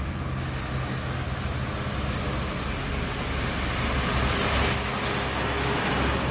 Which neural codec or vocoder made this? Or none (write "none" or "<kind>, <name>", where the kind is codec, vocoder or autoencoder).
none